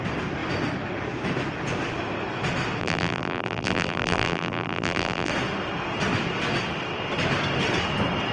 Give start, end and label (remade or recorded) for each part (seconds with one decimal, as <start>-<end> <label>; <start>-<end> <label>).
0.0-2.8 recorded; 2.8-5.3 remade; 5.3-8.3 recorded